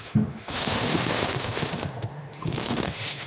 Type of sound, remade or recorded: remade